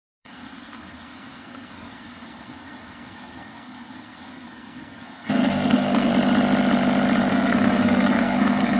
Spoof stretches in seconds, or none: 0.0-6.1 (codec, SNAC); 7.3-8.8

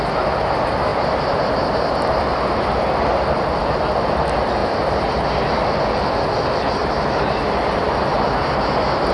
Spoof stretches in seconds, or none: 0.9-2.0 (vocoder, BigVGAN v2); 4.6-5.8; 6.8-7.6

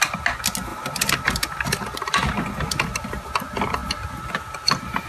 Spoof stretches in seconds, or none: 0.7-2.4 (vocoder, BigVGAN v2)

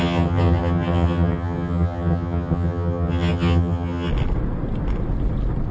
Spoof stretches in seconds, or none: 0.0-4.1 (vocoder, HiFi-GAN)

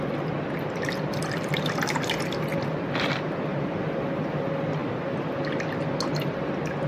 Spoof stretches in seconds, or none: 0.0-4.8 (vocoder, BigVGAN v2); 6.1-6.9